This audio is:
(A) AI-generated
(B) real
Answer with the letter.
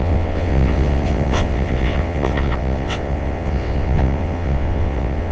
A